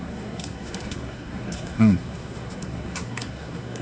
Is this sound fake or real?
fake